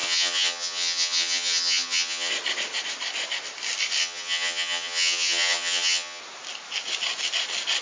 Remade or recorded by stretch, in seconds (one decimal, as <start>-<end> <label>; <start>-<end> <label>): 0.0-2.3 remade; 2.3-4.0 recorded; 4.0-6.2 remade; 6.2-7.8 recorded